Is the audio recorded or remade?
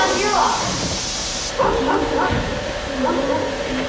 recorded